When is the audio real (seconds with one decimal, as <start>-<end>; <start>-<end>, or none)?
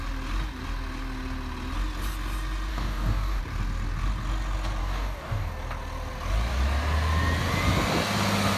0.0-2.7; 3.4-4.8; 5.5-8.6